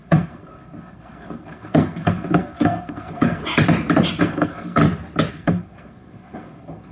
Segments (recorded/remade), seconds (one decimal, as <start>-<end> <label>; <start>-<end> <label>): 0.0-3.4 remade; 3.4-4.2 recorded; 4.2-4.8 remade; 4.8-5.3 recorded; 5.3-6.9 remade